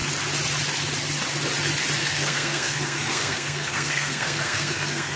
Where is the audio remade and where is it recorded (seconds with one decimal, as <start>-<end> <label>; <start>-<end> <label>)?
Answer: 0.0-2.0 recorded; 2.0-5.2 remade